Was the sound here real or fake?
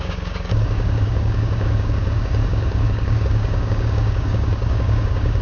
fake